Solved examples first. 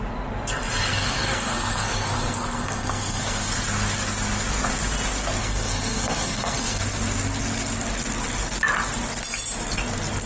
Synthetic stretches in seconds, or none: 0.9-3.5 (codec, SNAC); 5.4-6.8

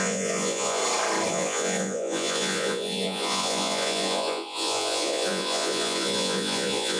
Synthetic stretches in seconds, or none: 0.0-0.8 (vocoder, Vocos); 1.3-7.0

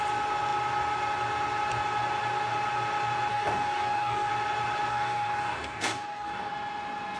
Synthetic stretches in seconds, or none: 3.3-4.3 (codec, DAC); 4.9-6.5

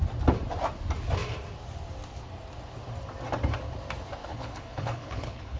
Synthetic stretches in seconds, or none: 4.2-5.6 (codec, HILCodec)

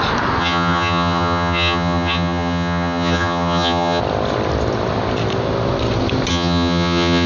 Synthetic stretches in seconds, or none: 0.4-4.0 (vocoder, HiFi-GAN); 6.3-7.3

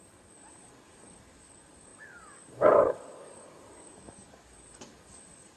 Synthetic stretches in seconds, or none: 0.0-5.6 (codec, DAC)

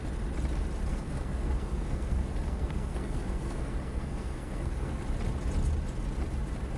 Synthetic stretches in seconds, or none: 0.9-5.0 (codec, SNAC)